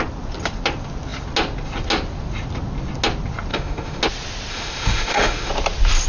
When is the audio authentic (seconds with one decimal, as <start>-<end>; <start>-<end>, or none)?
0.0-3.5; 4.0-4.5; 5.5-6.1